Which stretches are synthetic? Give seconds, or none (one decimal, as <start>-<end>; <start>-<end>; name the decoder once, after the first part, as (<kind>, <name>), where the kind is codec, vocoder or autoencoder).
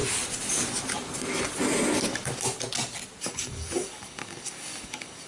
3.2-5.3 (codec, DAC)